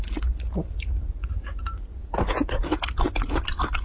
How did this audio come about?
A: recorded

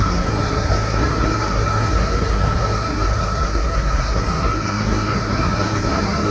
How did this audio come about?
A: remade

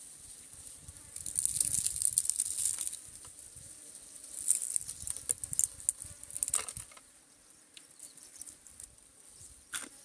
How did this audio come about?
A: recorded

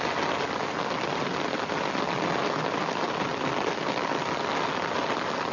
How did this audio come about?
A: recorded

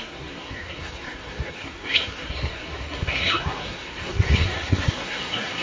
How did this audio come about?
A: remade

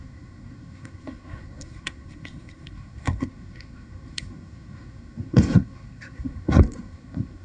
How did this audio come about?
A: remade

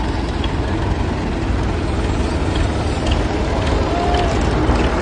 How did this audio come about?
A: recorded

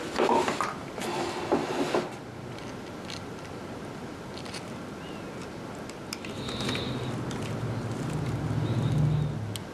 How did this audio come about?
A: recorded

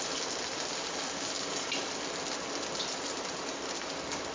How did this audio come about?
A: recorded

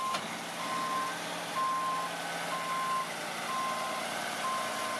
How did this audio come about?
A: recorded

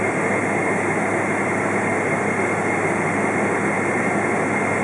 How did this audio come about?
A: recorded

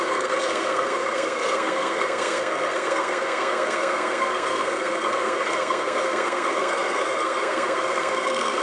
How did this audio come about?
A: remade